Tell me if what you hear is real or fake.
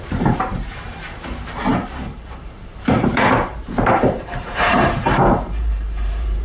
fake